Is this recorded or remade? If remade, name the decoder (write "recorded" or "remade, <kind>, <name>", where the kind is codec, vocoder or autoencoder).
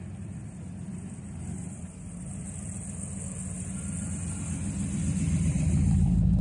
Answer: recorded